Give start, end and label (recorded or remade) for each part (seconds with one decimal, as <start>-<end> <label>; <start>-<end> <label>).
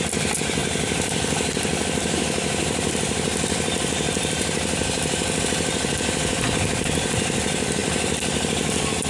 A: 0.0-9.1 remade